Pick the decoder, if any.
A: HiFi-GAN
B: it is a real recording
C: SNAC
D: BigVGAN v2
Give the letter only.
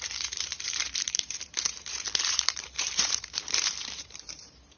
D